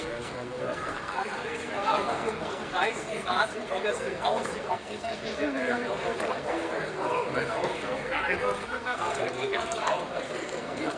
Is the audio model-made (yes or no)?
yes